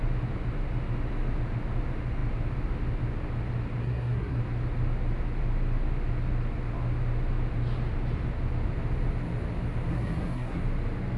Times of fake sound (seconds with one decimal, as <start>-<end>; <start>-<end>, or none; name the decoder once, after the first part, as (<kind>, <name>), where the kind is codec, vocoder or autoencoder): 3.8-4.4 (codec, SNAC); 9.9-10.6